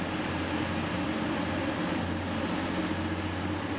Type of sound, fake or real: real